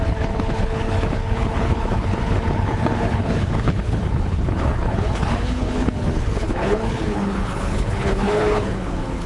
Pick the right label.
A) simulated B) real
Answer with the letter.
A